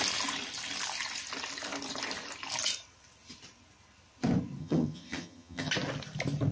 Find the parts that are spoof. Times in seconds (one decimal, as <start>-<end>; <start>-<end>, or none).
4.6-5.7